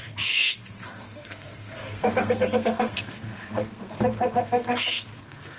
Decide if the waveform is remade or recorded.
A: remade